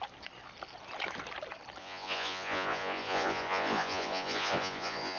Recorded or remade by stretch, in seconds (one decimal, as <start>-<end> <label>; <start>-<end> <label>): 0.0-1.8 recorded; 1.8-5.2 remade